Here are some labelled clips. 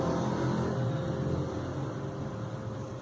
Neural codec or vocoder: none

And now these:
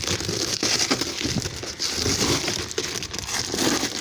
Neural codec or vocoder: none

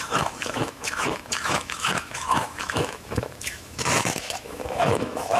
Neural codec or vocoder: autoencoder, DAC-VAE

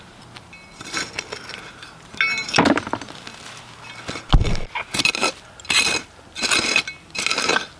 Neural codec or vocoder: none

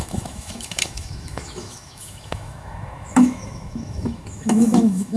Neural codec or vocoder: autoencoder, DAC-VAE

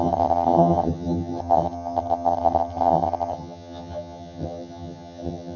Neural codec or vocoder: vocoder, HiFi-GAN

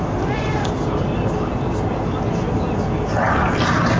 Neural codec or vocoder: none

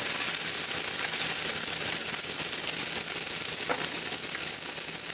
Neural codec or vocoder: none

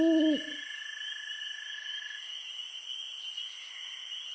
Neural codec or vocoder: none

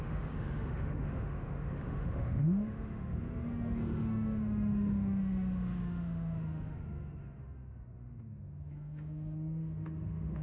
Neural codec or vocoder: autoencoder, DAC-VAE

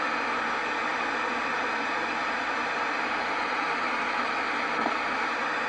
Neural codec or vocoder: none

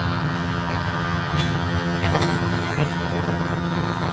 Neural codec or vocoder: vocoder, HiFi-GAN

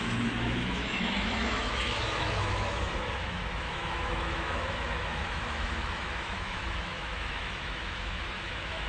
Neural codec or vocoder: autoencoder, DAC-VAE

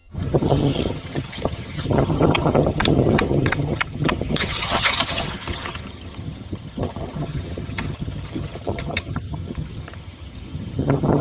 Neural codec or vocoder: vocoder, HiFi-GAN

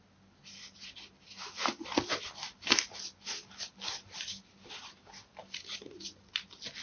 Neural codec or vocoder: none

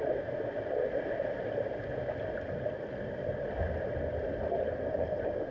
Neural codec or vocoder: none